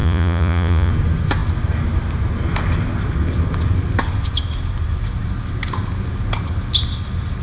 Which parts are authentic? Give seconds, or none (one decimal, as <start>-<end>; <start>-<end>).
0.9-7.4